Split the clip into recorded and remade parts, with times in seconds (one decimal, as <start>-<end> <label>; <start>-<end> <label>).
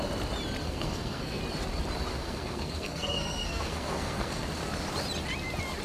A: 0.0-0.6 recorded; 0.6-1.4 remade; 1.4-2.1 recorded; 2.1-4.5 remade; 4.5-5.8 recorded